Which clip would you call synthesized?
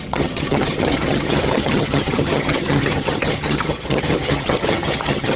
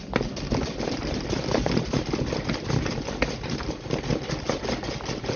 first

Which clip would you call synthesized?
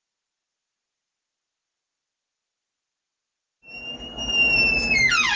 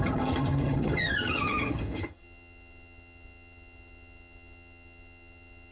second